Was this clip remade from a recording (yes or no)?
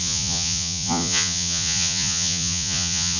yes